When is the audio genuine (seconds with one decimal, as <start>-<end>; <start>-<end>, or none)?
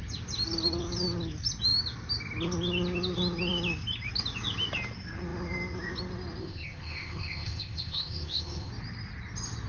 0.0-6.4; 8.7-9.7